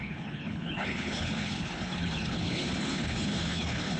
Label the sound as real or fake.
fake